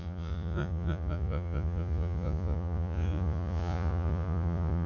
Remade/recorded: remade